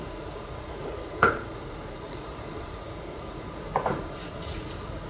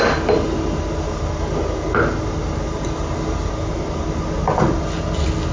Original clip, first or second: second